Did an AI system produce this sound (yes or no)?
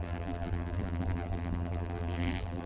yes